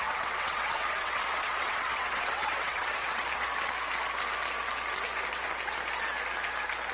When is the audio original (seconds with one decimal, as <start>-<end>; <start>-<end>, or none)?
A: 3.2-6.9